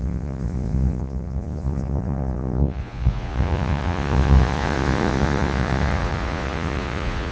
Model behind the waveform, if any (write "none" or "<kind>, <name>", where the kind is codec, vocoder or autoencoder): vocoder, Vocos